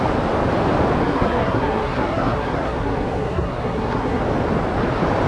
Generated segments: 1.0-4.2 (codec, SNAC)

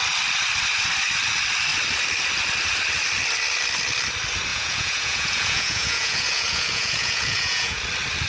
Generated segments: 4.5-7.8 (vocoder, Vocos)

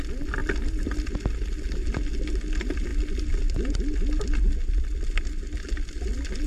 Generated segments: 0.4-1.1 (vocoder, BigVGAN v2)

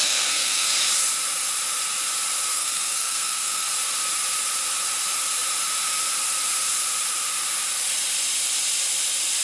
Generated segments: 0.0-0.7 (codec, SNAC); 2.5-3.7

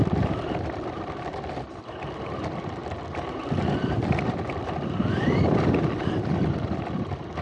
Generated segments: 0.0-7.4 (vocoder, BigVGAN v2)